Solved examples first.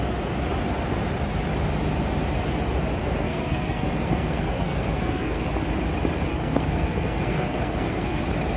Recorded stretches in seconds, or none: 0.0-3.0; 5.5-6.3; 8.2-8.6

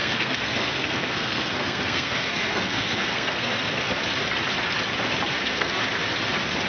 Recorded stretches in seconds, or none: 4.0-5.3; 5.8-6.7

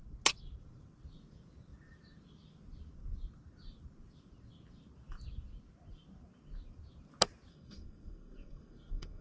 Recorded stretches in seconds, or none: 0.0-7.5

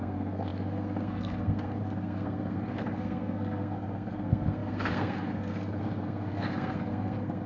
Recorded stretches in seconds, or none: none

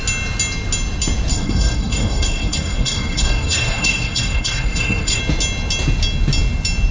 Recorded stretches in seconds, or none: 0.0-1.3; 5.2-6.9

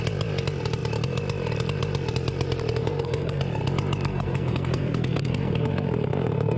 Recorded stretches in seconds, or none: 0.0-2.8; 3.4-4.1

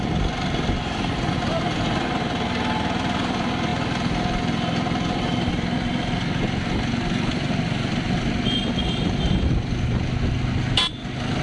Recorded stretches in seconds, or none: 0.0-11.4

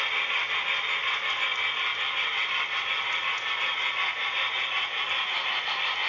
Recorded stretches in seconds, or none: 0.0-6.1